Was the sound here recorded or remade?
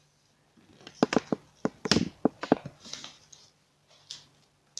recorded